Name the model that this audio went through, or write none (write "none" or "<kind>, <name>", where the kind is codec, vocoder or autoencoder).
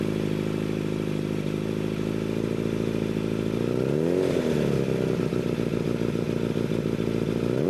none